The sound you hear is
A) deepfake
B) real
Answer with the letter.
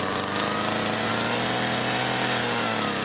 B